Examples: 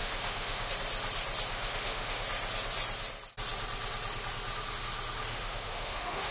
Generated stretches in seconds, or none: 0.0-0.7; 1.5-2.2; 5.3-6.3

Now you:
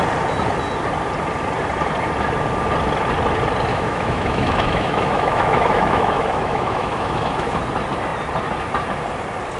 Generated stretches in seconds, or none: 3.7-7.6

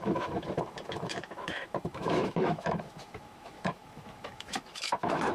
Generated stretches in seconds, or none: 0.0-5.3

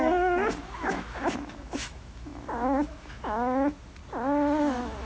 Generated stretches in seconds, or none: 0.0-4.0; 4.6-5.1